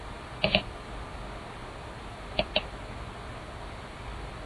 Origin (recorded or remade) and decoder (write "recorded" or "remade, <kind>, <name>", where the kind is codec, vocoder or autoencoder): recorded